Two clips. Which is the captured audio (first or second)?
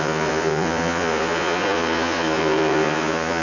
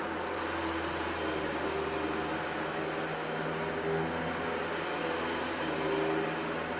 second